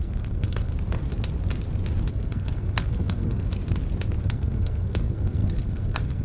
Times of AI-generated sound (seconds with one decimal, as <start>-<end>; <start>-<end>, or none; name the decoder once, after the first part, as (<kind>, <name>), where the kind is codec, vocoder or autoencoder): 0.0-0.7 (codec, SNAC); 2.1-3.5; 4.2-6.2